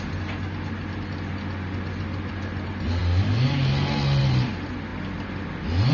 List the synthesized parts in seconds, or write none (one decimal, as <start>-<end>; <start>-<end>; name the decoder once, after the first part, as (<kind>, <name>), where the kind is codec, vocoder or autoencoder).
none